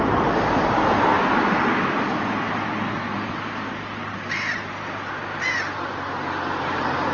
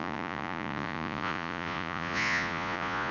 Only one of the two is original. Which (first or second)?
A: first